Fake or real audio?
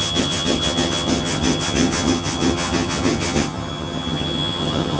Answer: fake